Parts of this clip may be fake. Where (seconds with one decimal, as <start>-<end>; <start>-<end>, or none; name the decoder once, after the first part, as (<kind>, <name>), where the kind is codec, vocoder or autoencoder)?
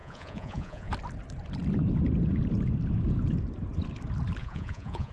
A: 0.0-0.9 (vocoder, Vocos); 4.4-5.1